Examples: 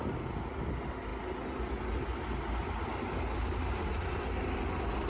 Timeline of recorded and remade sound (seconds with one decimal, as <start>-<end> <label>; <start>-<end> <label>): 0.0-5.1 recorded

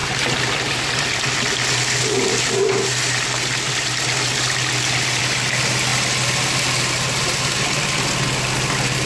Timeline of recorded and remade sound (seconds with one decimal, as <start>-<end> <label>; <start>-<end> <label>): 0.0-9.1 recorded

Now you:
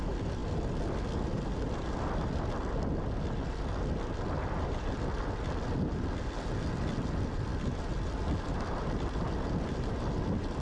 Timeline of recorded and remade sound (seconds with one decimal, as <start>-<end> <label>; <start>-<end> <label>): 0.0-10.6 recorded